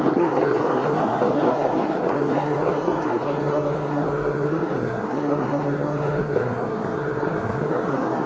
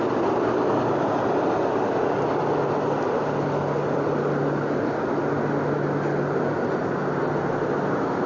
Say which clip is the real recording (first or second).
second